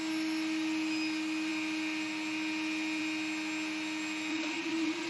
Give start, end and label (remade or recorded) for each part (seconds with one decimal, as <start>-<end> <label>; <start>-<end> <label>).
0.0-4.3 recorded; 4.3-5.1 remade